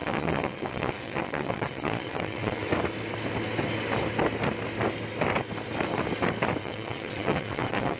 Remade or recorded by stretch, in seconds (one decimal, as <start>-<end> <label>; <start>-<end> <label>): 0.0-2.7 remade; 2.7-6.6 recorded; 6.6-8.0 remade

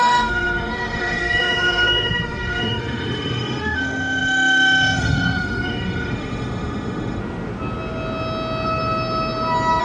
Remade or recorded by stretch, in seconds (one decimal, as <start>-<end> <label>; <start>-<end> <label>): 0.0-7.2 remade; 7.2-9.8 recorded

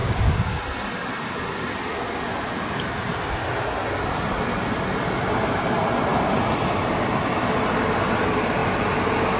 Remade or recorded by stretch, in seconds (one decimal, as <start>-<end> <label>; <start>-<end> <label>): 0.0-0.6 remade; 0.6-9.4 recorded

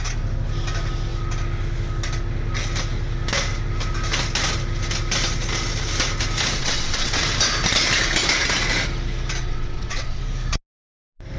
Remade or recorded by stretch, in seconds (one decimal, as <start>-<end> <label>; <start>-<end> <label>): 0.0-6.6 recorded; 6.6-7.2 remade; 7.2-9.4 recorded; 9.4-10.2 remade; 10.2-11.4 recorded

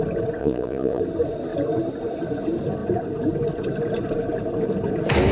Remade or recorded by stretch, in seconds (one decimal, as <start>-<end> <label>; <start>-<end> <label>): 0.0-0.4 recorded; 0.4-1.0 remade; 1.0-5.3 recorded